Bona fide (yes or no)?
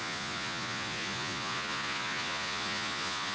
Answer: no